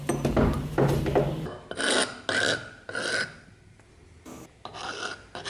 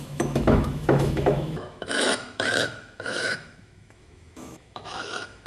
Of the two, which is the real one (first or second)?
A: first